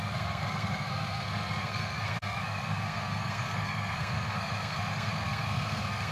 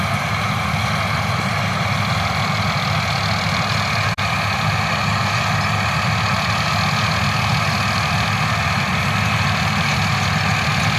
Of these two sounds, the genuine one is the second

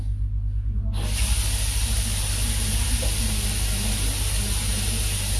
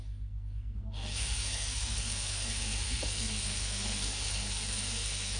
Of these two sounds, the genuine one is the first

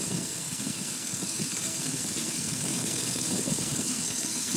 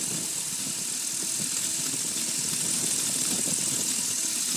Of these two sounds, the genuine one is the second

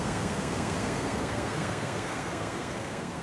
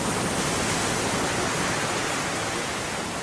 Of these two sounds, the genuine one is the second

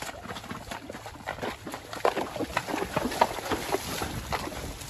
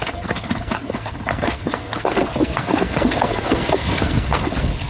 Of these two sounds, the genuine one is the first